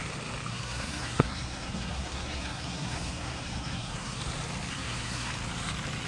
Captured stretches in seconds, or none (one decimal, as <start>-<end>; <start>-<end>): 0.0-0.5; 4.2-4.7; 5.3-6.1